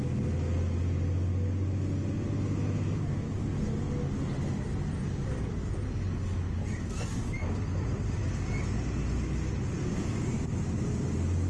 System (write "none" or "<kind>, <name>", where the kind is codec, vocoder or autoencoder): none